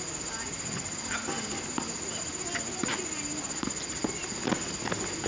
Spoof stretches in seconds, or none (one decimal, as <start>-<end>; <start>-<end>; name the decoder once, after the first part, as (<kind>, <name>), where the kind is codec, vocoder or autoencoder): none